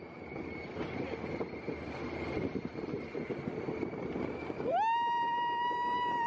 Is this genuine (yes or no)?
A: yes